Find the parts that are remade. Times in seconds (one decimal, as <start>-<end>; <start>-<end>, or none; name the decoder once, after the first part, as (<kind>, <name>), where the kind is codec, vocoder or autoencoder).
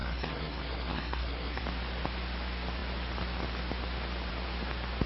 0.0-1.6 (codec, SNAC)